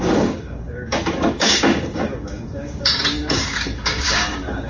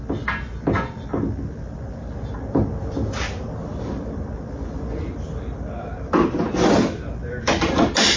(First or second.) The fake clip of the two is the first